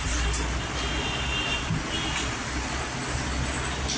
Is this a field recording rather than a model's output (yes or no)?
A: yes